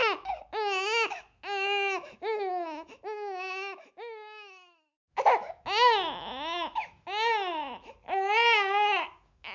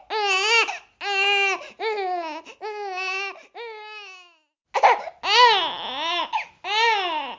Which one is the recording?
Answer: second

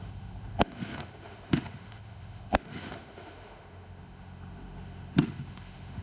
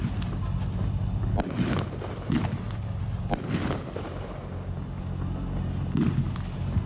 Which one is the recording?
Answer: second